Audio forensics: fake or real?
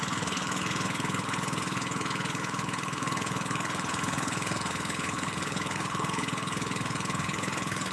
fake